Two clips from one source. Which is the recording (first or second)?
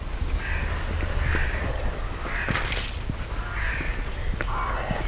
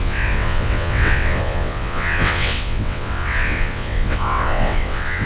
first